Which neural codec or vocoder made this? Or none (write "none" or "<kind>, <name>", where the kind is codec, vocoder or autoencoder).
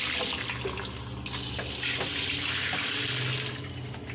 none